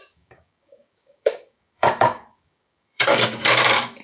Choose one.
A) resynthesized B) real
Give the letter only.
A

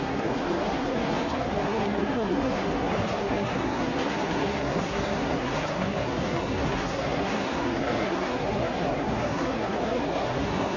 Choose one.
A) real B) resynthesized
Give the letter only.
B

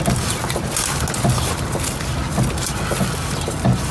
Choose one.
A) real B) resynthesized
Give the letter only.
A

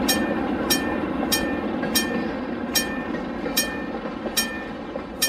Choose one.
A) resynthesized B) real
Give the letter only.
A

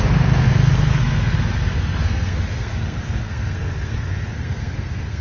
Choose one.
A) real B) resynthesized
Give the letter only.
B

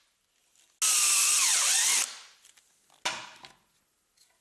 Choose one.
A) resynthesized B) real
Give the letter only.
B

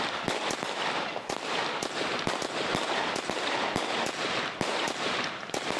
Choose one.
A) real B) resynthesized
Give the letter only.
A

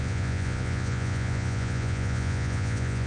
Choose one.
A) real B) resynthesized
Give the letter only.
B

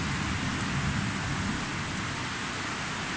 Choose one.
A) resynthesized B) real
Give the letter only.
B